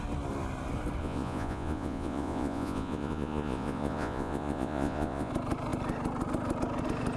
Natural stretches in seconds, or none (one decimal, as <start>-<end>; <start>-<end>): 0.0-1.0; 5.3-7.2